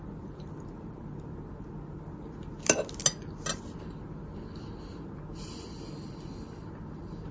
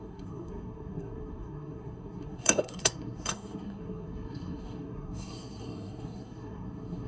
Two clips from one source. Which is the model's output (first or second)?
second